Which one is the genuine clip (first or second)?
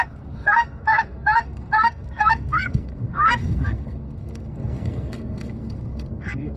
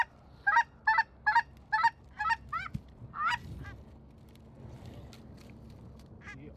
second